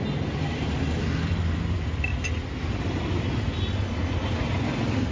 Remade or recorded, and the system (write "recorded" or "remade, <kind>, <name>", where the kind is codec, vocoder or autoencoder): recorded